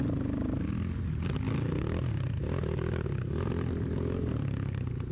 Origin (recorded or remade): recorded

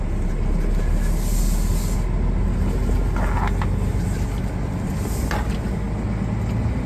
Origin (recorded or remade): recorded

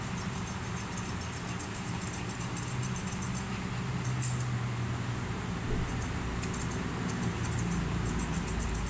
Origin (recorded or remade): recorded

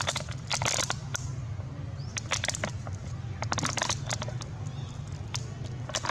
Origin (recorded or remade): recorded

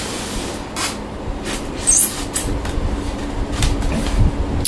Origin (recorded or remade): recorded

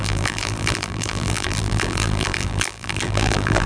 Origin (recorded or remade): remade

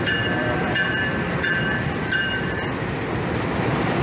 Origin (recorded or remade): remade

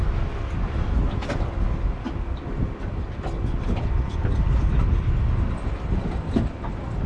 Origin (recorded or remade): recorded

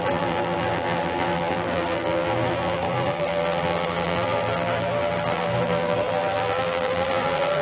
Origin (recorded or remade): remade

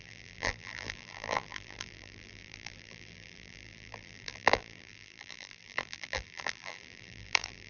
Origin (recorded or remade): remade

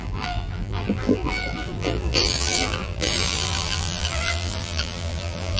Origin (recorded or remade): remade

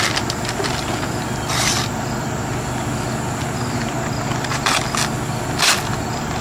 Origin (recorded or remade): recorded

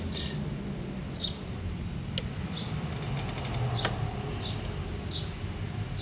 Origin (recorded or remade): recorded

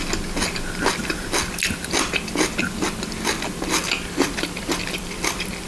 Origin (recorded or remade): recorded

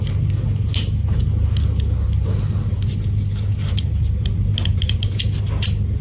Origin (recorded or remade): recorded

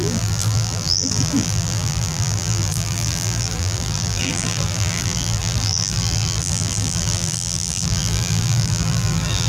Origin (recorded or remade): remade